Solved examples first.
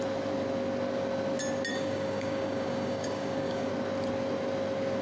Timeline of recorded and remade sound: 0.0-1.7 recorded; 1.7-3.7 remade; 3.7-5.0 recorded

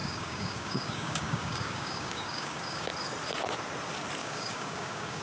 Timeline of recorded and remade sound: 0.0-2.9 remade; 2.9-4.2 recorded; 4.2-5.2 remade

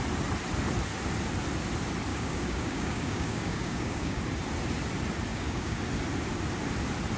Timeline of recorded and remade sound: 0.0-2.1 recorded; 2.1-4.2 remade; 4.2-5.3 recorded; 5.3-5.8 remade; 5.8-7.2 recorded

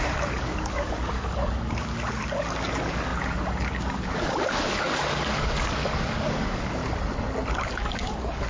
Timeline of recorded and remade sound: 0.0-6.8 remade; 6.8-7.5 recorded; 7.5-8.5 remade

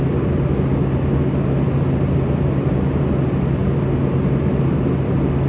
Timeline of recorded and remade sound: 0.0-5.5 recorded